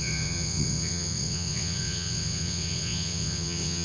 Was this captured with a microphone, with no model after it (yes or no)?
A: no